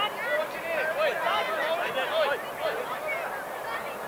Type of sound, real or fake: real